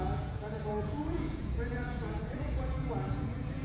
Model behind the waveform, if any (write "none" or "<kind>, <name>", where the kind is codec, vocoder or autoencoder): vocoder, Vocos